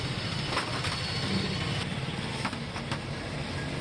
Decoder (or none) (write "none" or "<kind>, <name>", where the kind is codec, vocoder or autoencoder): none